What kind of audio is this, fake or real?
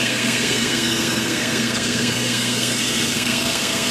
fake